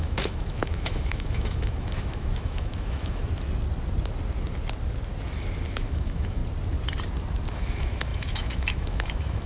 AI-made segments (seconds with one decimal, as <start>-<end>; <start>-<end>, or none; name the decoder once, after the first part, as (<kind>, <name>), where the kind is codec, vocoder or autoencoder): 0.0-3.2 (autoencoder, DAC-VAE); 5.7-6.4; 7.5-9.5